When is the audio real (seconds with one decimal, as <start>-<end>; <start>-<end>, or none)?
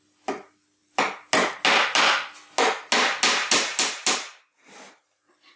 0.0-5.6